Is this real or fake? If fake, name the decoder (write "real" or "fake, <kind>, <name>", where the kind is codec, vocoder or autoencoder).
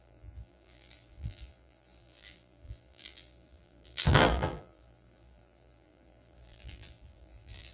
fake, vocoder, BigVGAN v2